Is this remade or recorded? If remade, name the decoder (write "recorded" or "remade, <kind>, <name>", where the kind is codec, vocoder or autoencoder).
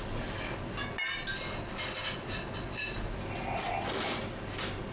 recorded